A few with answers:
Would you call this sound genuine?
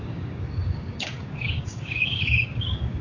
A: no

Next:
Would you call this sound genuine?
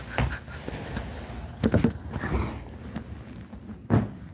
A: yes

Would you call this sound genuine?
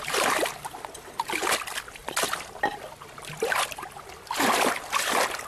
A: yes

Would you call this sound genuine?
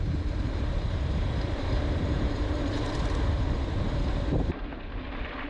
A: no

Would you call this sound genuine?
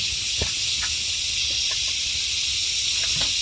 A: yes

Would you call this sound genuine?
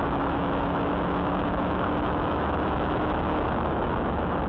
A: no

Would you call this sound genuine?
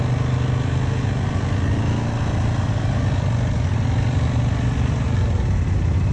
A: yes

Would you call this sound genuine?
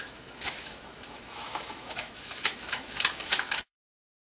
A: no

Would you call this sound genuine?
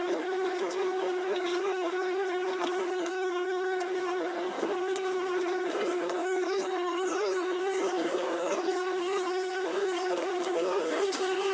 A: no